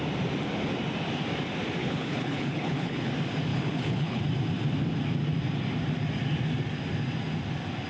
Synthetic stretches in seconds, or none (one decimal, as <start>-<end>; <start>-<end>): 1.8-3.1; 3.5-4.2